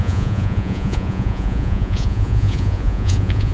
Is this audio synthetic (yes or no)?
yes